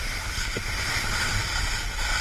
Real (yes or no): no